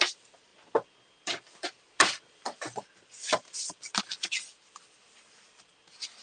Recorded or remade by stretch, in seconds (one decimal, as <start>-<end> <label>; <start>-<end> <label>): 0.0-6.2 recorded